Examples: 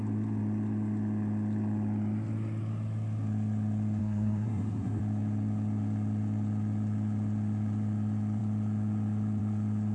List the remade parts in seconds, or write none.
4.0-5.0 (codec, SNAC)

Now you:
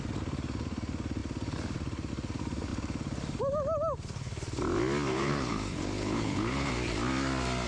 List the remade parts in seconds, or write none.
5.1-6.7 (codec, HILCodec)

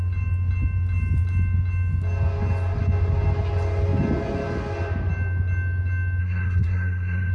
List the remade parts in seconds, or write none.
6.2-7.3 (codec, SNAC)

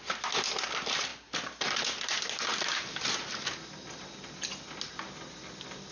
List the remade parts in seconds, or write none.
none

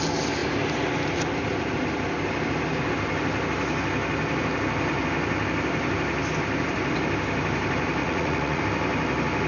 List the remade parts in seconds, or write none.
8.0-8.6 (vocoder, Vocos)

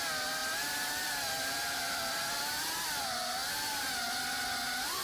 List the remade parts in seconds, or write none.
0.4-2.4 (vocoder, BigVGAN v2)

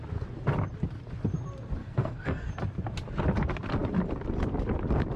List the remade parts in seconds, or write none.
1.8-2.5 (codec, SNAC)